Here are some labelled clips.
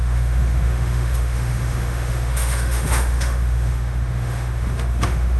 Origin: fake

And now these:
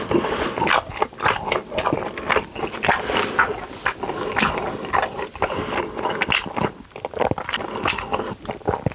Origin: real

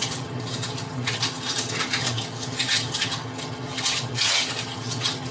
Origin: fake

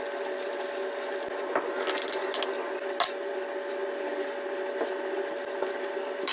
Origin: real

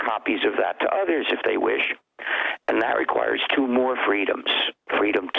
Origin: real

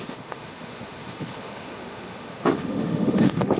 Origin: fake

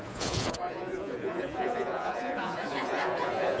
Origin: fake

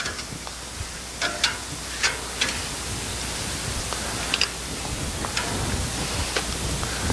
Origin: real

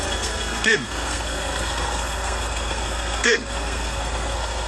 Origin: fake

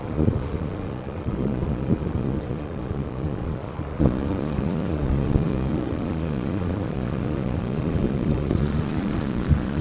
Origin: fake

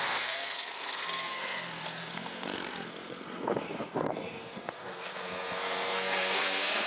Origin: fake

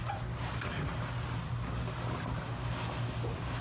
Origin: real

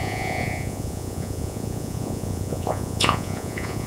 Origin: fake